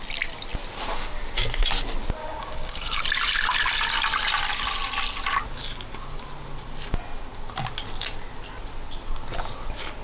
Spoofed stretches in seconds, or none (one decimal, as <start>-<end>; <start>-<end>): 2.2-3.0